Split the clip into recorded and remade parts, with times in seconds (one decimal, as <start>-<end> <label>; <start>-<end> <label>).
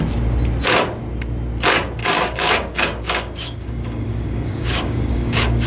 0.0-2.0 recorded; 2.0-5.7 remade